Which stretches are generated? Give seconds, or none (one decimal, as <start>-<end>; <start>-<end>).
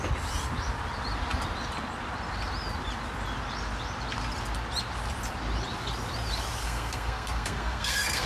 6.6-8.3